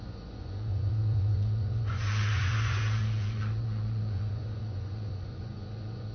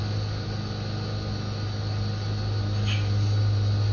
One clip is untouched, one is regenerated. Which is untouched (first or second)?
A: second